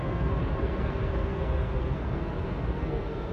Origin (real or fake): fake